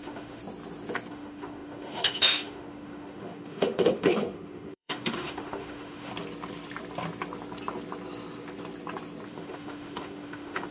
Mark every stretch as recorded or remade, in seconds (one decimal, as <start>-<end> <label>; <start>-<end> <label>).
0.0-0.4 remade; 0.4-1.1 recorded; 1.1-6.1 remade; 6.1-9.3 recorded; 9.3-10.7 remade